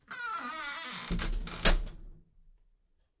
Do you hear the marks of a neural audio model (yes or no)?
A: no